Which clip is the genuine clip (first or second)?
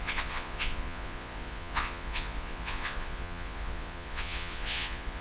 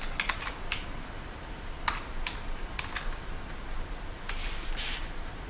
second